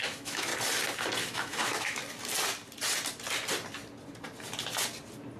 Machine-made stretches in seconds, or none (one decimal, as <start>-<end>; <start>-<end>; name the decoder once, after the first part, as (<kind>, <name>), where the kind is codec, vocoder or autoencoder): 0.0-0.5 (autoencoder, DAC-VAE); 1.2-2.0